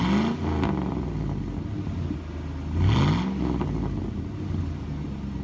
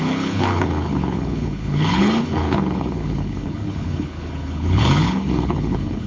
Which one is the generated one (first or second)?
second